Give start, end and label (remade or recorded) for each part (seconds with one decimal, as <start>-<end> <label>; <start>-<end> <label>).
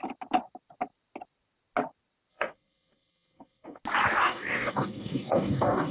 0.0-2.3 recorded; 2.3-3.8 remade; 3.8-4.2 recorded; 4.2-5.9 remade